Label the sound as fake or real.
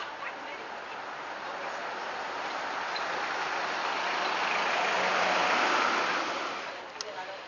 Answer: real